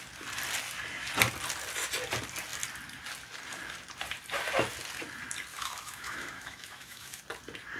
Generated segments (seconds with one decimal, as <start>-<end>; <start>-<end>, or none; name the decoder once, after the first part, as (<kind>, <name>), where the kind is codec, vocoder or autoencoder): 5.5-7.2 (autoencoder, DAC-VAE)

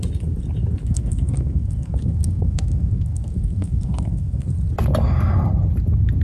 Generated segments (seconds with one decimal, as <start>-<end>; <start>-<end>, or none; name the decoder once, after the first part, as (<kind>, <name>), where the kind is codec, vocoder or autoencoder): 0.8-4.5 (codec, SNAC)

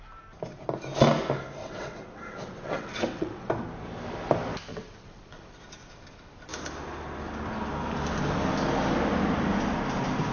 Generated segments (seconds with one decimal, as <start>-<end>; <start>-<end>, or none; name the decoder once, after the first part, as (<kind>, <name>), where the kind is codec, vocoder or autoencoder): 1.6-3.5 (vocoder, WaveNeXt); 4.7-5.6